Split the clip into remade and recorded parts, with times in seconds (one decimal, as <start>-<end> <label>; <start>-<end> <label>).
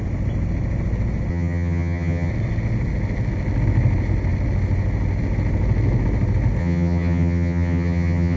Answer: 0.0-1.3 recorded; 1.3-2.3 remade; 2.3-6.6 recorded; 6.6-8.4 remade